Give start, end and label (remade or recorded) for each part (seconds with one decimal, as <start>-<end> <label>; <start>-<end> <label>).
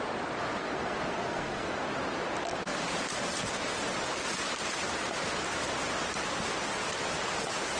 0.0-0.6 recorded; 0.6-1.8 remade; 1.8-7.8 recorded